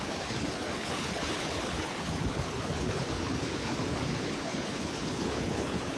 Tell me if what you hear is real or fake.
fake